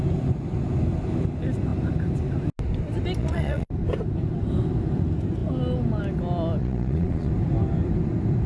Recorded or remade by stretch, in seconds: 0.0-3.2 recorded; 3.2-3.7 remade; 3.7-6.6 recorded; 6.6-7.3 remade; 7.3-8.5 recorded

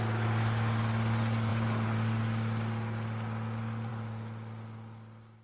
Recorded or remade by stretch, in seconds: 0.0-5.4 recorded